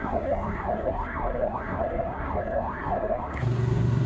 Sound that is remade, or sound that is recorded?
remade